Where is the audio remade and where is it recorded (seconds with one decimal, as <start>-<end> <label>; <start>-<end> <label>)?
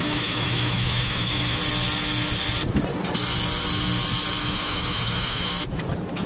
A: 0.0-1.6 remade; 1.6-4.4 recorded; 4.4-5.5 remade; 5.5-6.3 recorded